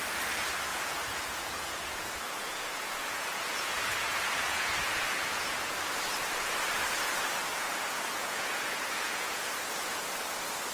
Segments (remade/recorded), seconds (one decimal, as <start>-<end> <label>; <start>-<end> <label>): 0.0-0.7 recorded; 0.7-5.7 remade; 5.7-7.5 recorded; 7.5-10.1 remade; 10.1-10.7 recorded